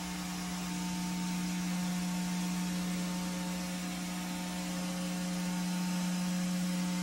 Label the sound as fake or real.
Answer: real